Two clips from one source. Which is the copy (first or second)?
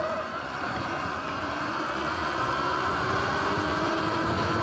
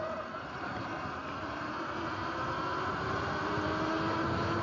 first